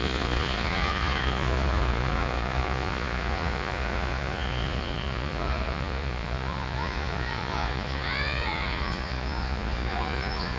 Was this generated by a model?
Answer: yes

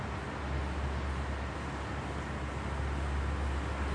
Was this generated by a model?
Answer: no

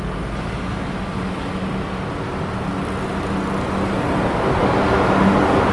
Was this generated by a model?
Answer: no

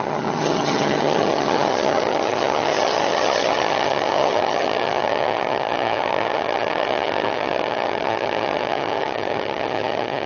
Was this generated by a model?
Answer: yes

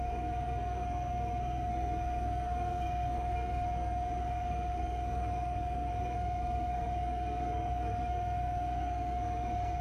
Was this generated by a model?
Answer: yes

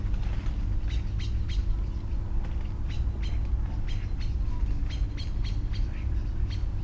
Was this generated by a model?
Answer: no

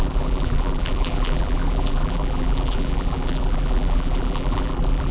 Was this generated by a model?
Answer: yes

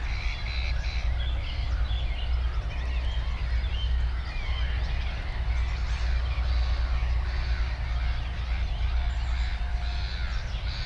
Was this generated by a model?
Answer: no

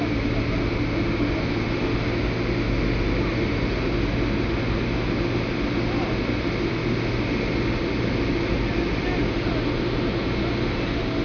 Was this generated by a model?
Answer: no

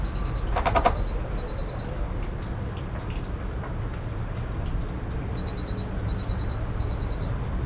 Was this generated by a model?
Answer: no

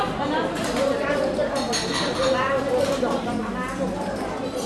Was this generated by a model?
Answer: no